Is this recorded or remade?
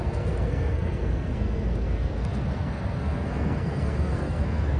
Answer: remade